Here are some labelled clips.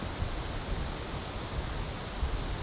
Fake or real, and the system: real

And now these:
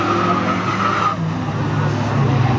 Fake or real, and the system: real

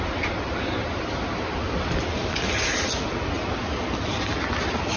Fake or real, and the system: real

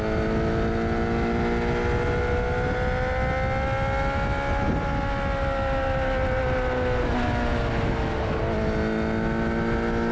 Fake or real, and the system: real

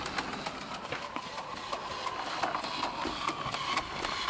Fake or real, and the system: real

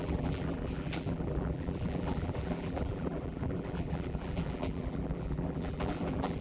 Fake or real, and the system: fake, vocoder, BigVGAN v2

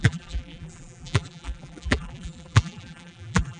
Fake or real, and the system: fake, vocoder, BigVGAN v2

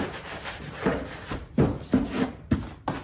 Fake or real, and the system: real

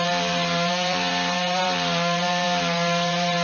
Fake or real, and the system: fake, vocoder, BigVGAN v2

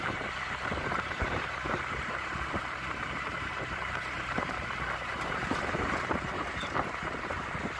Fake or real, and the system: fake, vocoder, BigVGAN v2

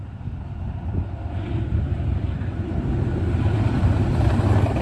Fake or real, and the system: fake, vocoder, BigVGAN v2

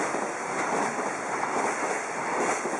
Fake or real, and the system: real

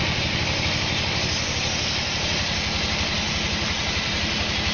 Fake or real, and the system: real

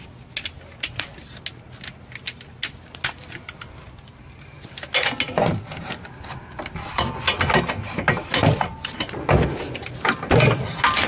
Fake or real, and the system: real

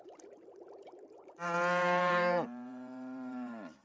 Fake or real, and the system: fake, vocoder, BigVGAN v2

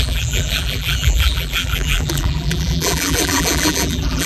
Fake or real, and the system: fake, vocoder, BigVGAN v2